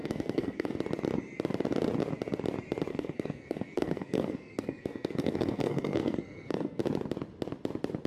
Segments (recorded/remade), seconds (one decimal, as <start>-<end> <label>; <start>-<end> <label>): 0.0-0.8 remade; 0.8-2.9 recorded; 2.9-6.8 remade; 6.8-8.1 recorded